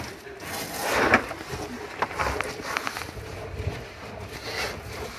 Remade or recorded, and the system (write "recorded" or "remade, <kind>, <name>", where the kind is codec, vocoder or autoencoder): recorded